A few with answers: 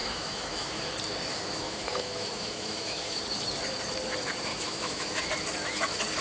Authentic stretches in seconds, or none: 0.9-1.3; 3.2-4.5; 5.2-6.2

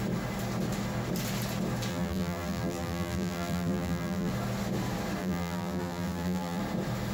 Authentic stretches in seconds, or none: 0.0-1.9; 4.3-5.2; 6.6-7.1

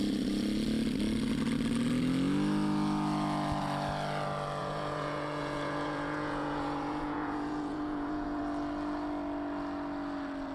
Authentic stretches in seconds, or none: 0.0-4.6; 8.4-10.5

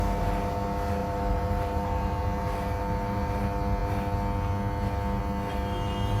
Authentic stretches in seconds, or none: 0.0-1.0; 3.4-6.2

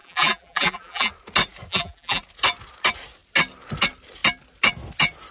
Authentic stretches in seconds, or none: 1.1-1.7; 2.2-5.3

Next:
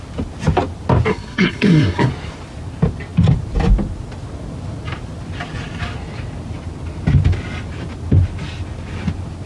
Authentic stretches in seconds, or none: 0.0-1.1; 2.1-9.5